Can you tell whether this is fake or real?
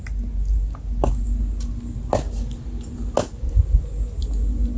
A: real